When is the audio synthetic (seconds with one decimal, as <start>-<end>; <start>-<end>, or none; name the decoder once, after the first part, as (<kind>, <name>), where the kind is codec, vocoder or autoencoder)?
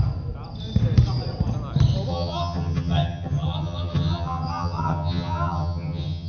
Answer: 2.1-6.3 (vocoder, HiFi-GAN)